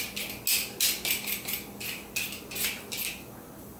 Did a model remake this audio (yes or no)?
no